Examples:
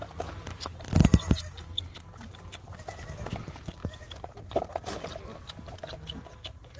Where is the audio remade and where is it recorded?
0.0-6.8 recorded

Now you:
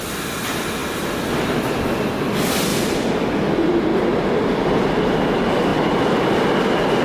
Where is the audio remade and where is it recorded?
0.0-0.8 remade; 0.8-1.9 recorded; 1.9-2.7 remade; 2.7-3.7 recorded; 3.7-5.7 remade; 5.7-6.6 recorded; 6.6-7.0 remade